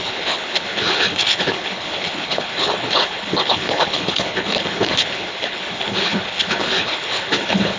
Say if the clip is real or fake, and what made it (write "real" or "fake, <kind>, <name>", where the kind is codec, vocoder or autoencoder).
fake, codec, HILCodec